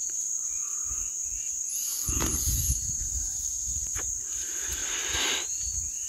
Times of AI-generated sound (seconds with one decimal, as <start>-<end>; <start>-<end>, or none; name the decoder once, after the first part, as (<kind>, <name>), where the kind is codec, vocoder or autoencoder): 0.9-1.3 (vocoder, BigVGAN v2); 2.9-4.8; 5.3-6.1